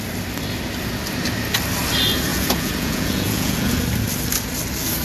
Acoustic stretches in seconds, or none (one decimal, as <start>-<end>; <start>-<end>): 0.0-2.3; 3.8-5.0